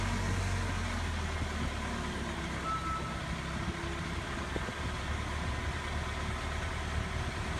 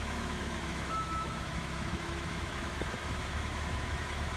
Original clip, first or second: first